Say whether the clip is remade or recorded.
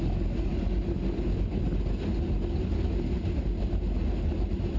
recorded